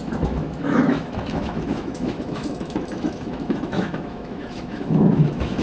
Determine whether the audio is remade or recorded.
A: remade